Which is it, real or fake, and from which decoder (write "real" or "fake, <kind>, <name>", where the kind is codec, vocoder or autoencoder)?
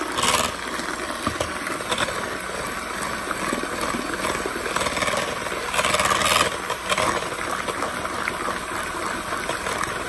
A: real